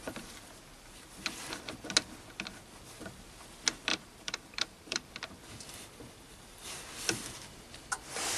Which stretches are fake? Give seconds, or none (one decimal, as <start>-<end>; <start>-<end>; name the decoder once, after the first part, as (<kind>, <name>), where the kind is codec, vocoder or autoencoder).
3.9-5.1 (vocoder, BigVGAN v2)